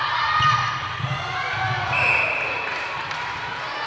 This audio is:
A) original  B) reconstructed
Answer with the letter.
A